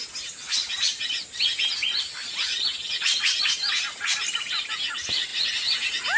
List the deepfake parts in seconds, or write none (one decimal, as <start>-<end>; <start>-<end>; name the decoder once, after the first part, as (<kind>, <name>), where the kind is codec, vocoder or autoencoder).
none